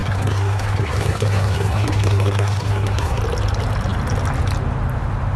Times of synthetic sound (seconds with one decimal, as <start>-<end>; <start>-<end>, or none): 0.0-3.2